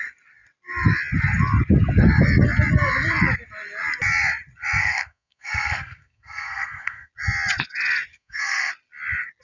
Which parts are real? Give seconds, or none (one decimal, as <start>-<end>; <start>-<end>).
0.0-4.8; 7.1-8.1; 8.7-9.4